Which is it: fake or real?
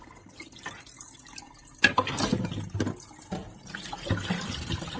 real